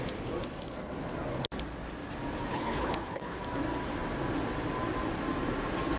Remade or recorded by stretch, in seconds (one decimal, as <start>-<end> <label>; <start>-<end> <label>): 0.0-2.5 recorded; 2.5-3.4 remade; 3.4-6.0 recorded